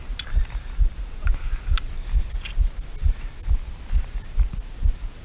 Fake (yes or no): no